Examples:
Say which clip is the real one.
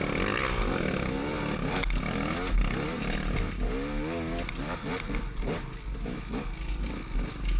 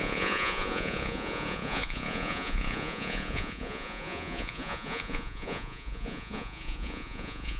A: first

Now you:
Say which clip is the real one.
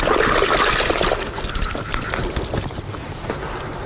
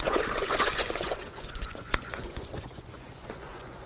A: first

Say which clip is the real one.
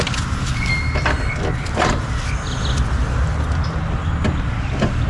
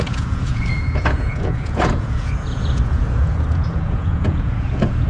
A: first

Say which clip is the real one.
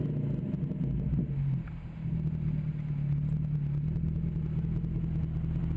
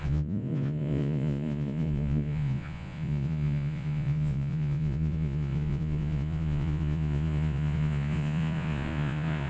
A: first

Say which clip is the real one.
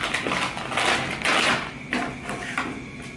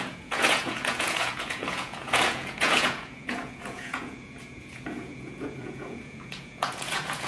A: first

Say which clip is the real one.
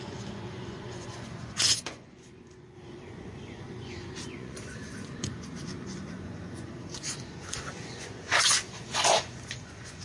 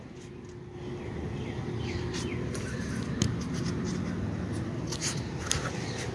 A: second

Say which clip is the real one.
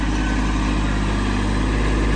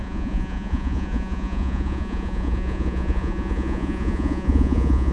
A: first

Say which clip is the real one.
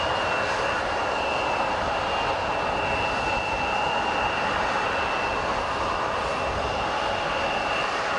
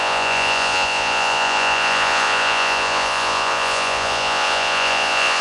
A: first